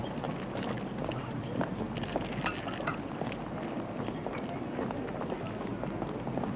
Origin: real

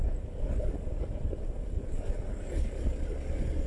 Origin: real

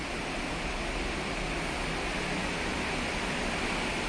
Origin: real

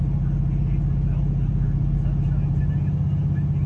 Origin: real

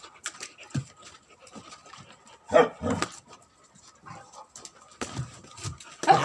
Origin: real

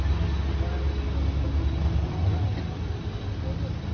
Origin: real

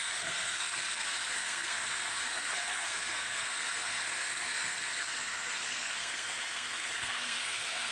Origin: fake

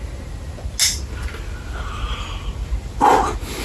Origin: real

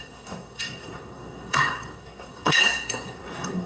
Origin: fake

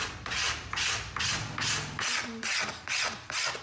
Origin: real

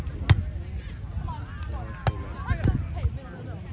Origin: real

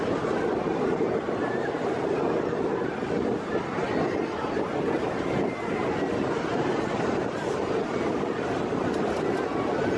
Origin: real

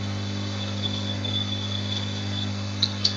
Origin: fake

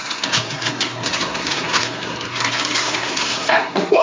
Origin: fake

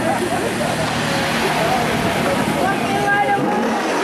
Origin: real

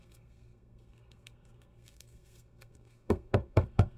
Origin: fake